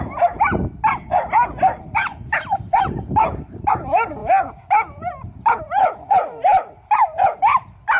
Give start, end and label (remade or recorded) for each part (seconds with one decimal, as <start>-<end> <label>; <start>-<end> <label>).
0.0-8.0 recorded